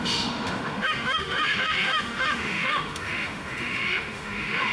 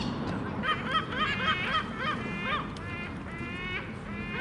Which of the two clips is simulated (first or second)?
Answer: first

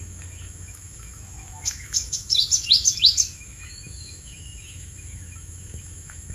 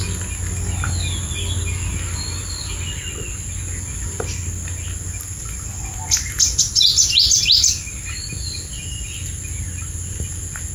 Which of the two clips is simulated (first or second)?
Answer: first